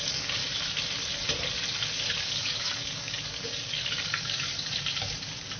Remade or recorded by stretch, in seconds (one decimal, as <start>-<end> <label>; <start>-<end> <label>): 0.0-0.4 remade; 0.4-2.2 recorded; 2.2-4.5 remade; 4.5-5.6 recorded